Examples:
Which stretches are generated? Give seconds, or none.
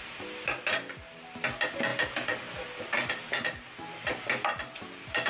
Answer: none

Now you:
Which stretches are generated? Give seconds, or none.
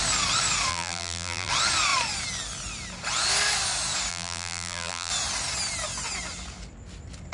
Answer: 0.7-1.5 (vocoder, BigVGAN v2); 4.1-5.1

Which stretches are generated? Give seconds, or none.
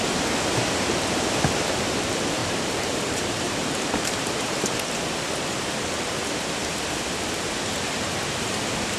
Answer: 2.4-4.8 (vocoder, BigVGAN v2)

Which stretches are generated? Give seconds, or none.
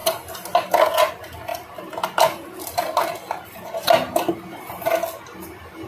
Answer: none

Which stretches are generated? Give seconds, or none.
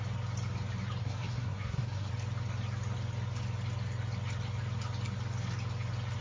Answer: 1.0-2.1 (codec, SNAC)